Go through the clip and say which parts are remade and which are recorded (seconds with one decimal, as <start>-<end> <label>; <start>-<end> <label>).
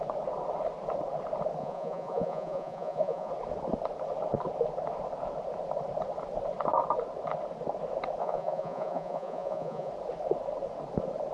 0.0-1.6 recorded; 1.6-3.3 remade; 3.3-8.2 recorded; 8.2-9.9 remade; 9.9-11.3 recorded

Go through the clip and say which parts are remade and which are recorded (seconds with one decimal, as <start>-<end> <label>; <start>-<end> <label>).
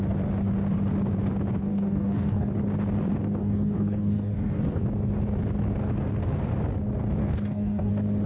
0.0-1.7 recorded; 1.7-2.5 remade; 2.5-3.4 recorded; 3.4-4.8 remade; 4.8-7.2 recorded; 7.2-7.9 remade; 7.9-8.3 recorded